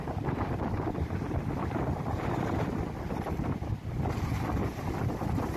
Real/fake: real